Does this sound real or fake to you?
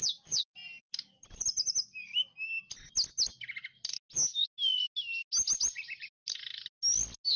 real